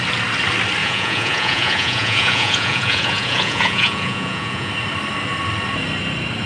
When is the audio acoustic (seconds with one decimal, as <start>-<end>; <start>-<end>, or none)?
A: 0.0-0.8; 4.7-6.5